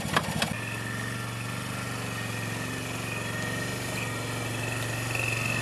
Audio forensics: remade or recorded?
recorded